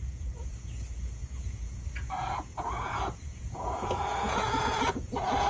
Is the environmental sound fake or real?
fake